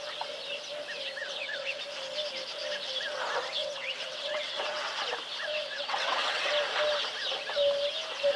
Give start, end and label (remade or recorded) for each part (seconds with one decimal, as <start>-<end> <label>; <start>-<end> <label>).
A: 0.0-1.2 recorded; 1.2-1.8 remade; 1.8-3.6 recorded; 3.6-4.9 remade; 4.9-5.5 recorded; 5.5-6.5 remade; 6.5-8.4 recorded